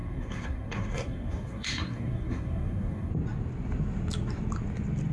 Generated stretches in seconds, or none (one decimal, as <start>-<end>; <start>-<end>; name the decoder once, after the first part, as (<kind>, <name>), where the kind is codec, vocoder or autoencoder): 0.0-3.1 (codec, SNAC)